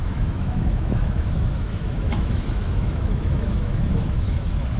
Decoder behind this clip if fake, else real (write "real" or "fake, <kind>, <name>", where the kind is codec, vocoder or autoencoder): fake, autoencoder, DAC-VAE